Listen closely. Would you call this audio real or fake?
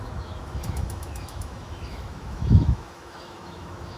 fake